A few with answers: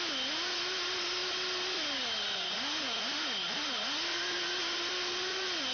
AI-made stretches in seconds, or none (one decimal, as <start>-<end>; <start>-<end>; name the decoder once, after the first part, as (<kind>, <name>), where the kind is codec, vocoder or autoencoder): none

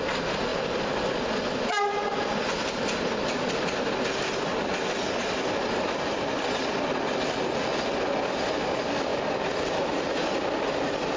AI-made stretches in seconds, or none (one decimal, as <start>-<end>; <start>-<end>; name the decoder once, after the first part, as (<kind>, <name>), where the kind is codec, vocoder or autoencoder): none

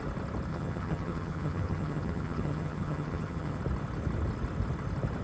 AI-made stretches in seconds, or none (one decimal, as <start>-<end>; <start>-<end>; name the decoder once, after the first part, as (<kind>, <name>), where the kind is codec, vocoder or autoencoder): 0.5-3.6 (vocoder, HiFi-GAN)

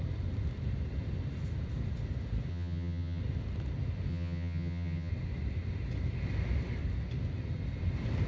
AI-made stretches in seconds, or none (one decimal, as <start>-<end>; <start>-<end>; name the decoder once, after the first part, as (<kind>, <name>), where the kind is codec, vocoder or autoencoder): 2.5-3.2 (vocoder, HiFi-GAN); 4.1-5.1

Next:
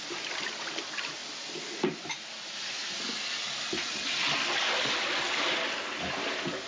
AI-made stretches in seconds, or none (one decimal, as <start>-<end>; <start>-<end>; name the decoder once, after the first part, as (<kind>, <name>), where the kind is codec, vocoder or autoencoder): none

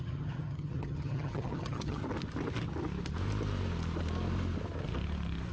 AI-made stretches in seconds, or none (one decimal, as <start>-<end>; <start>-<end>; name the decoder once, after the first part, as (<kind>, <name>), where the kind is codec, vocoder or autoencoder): 0.0-2.0 (vocoder, HiFi-GAN)

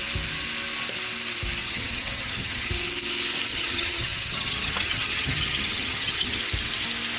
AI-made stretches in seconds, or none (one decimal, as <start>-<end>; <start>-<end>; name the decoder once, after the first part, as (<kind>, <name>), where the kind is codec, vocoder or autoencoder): 1.6-2.7 (vocoder, HiFi-GAN); 3.5-6.4

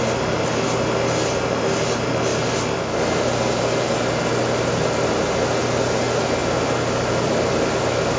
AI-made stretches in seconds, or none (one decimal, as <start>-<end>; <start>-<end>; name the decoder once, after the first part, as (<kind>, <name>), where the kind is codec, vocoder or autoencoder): none